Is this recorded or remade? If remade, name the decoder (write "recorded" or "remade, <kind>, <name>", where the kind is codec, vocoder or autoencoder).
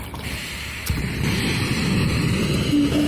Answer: recorded